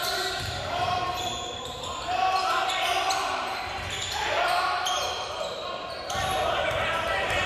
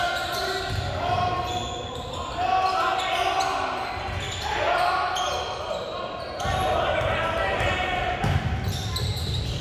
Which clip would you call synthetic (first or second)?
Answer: first